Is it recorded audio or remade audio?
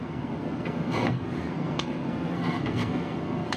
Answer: remade